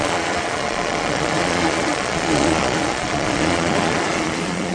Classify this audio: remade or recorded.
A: remade